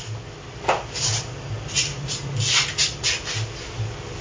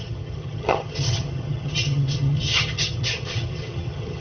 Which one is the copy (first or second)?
second